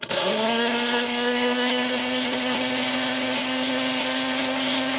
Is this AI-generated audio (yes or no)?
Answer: yes